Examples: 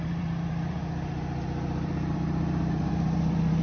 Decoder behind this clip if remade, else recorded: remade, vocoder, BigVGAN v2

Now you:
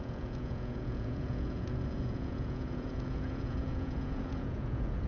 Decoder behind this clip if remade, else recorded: remade, vocoder, Vocos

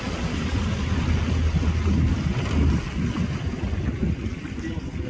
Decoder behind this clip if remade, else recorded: recorded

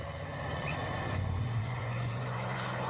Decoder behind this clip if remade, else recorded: remade, vocoder, Vocos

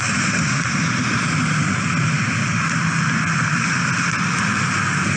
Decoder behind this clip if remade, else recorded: recorded